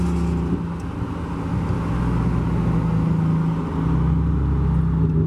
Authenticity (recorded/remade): recorded